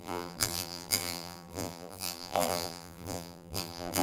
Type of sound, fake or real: fake